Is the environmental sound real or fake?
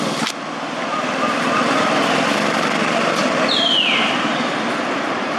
fake